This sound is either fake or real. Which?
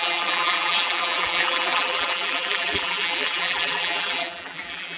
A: fake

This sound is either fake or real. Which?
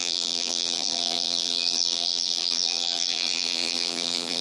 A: fake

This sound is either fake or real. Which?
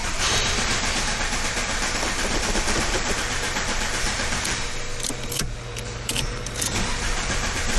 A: fake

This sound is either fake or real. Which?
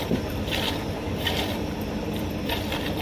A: fake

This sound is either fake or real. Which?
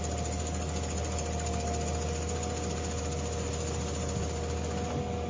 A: real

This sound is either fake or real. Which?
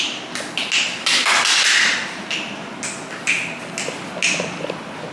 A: real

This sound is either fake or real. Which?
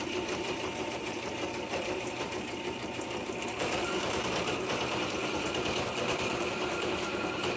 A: fake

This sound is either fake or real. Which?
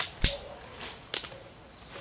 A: real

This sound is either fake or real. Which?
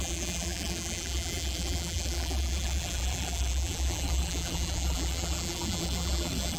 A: fake